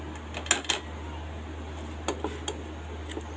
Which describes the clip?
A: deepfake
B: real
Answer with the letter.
B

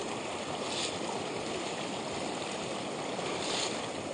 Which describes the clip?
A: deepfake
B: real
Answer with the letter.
B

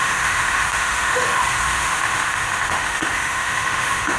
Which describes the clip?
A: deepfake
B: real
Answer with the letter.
A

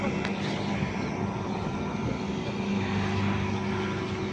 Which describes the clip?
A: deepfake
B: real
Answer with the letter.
B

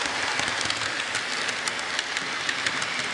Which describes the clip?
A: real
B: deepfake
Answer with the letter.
A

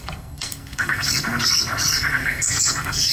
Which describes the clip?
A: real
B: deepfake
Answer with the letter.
B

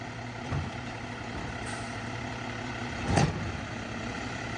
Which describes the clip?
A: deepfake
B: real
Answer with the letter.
A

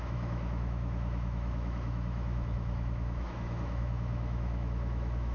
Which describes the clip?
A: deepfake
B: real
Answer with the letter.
A